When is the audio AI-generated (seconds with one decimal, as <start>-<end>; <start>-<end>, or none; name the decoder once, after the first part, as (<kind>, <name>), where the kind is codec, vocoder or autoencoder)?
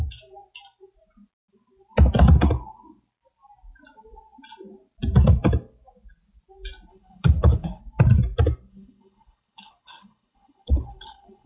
6.9-7.8 (codec, HILCodec); 8.7-11.5